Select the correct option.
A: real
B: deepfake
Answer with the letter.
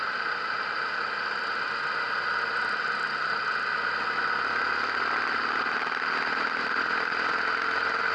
A